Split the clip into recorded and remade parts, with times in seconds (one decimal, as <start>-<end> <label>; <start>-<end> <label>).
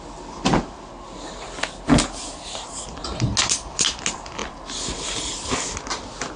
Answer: 0.0-6.4 recorded